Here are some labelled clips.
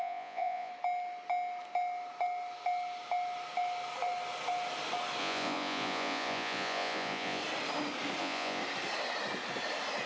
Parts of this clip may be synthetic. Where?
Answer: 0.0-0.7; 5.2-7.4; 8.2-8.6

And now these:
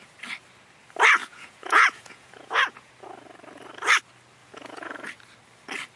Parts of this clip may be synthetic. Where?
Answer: 1.2-2.9; 4.4-5.1

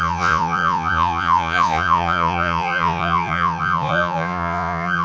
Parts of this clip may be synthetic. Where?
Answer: 0.0-5.0

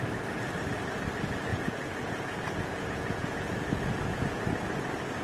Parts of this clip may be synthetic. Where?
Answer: 1.5-4.2

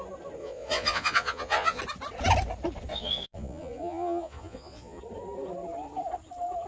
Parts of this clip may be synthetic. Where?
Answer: 0.4-1.8; 2.9-5.0